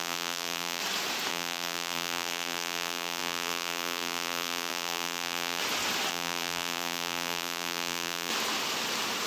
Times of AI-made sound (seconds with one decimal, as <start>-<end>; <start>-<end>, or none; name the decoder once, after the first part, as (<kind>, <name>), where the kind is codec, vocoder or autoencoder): 0.0-0.8 (vocoder, BigVGAN v2); 1.3-5.6; 6.1-8.3